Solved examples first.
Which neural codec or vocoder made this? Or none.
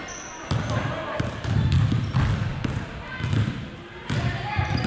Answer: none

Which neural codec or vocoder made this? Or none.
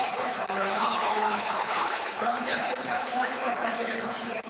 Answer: codec, HILCodec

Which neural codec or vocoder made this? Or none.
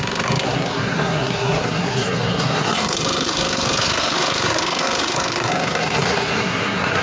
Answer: codec, SNAC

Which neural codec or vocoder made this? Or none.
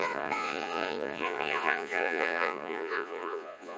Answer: vocoder, Vocos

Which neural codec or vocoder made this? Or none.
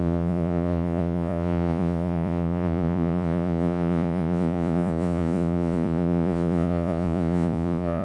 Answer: vocoder, Vocos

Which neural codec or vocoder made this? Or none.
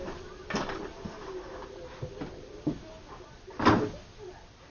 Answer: none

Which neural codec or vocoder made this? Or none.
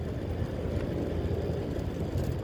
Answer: none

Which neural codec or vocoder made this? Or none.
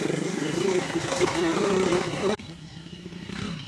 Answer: codec, SNAC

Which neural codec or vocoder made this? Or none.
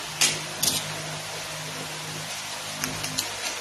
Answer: none